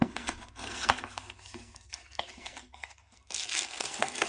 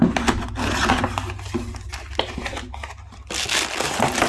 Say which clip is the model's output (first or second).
first